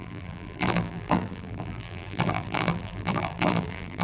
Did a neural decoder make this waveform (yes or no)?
yes